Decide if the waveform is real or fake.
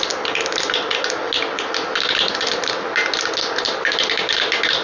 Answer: real